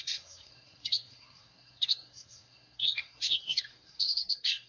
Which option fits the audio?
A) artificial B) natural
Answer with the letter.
A